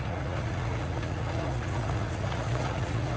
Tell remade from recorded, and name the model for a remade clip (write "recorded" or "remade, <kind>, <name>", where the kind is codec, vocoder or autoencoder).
remade, vocoder, Vocos